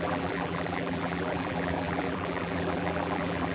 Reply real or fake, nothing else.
fake